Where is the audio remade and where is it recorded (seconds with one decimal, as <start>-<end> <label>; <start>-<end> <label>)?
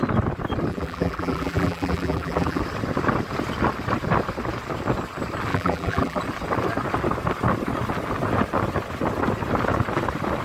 0.0-0.7 recorded; 0.7-2.6 remade; 2.6-5.5 recorded; 5.5-6.2 remade; 6.2-10.4 recorded